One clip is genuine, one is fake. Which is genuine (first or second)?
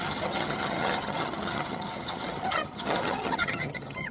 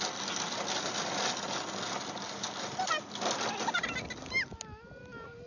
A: second